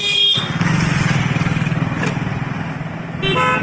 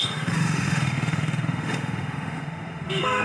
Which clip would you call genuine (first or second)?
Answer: first